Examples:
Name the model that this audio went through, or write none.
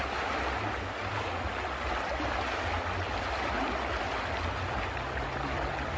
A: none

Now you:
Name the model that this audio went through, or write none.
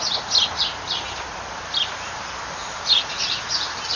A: none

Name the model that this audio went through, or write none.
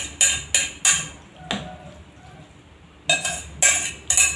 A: none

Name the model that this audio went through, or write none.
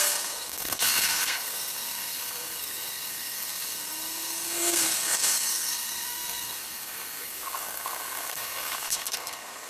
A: codec, SNAC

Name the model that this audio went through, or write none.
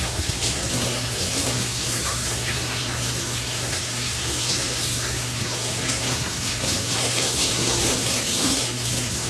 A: codec, SNAC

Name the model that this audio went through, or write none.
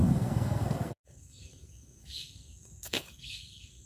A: codec, SNAC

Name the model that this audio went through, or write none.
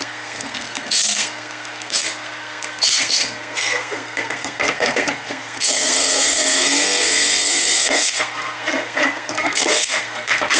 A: codec, SNAC